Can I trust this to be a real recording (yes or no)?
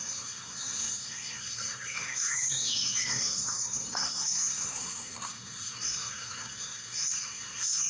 no